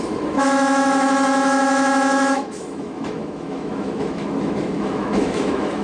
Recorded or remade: remade